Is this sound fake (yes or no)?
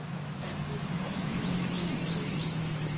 yes